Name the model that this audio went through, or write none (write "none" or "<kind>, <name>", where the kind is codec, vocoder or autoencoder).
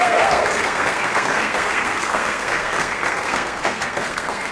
codec, SNAC